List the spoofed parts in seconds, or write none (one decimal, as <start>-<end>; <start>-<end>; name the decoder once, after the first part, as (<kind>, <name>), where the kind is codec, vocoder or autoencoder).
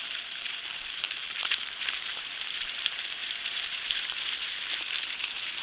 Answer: 0.0-5.6 (vocoder, BigVGAN v2)